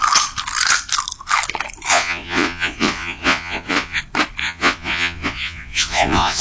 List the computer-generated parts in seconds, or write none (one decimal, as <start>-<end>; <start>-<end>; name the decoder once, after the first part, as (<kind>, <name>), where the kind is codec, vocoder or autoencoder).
1.9-4.0 (vocoder, Vocos); 4.4-6.4